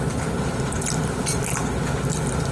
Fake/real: real